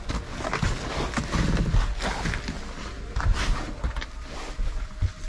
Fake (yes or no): no